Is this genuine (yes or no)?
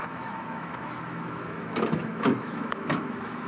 no